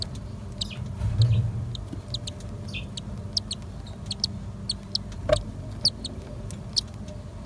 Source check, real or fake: real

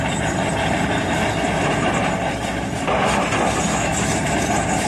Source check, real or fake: fake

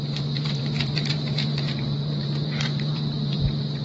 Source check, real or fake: fake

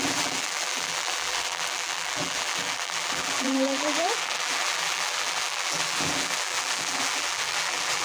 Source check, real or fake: fake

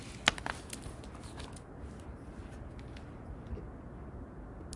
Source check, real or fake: real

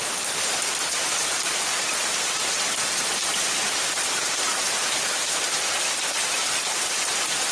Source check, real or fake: fake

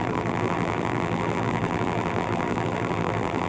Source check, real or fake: fake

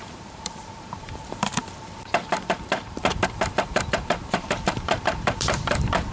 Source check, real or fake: fake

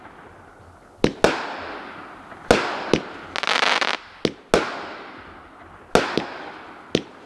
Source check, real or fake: real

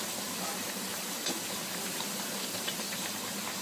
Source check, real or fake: fake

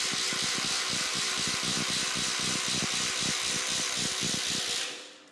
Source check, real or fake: fake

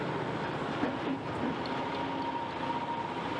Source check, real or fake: real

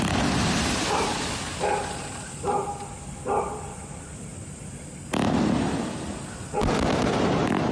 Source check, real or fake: real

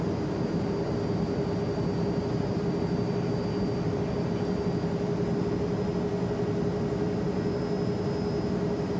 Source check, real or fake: real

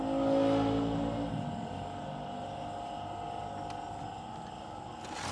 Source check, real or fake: real